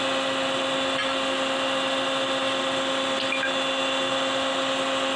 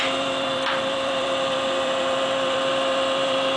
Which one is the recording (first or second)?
first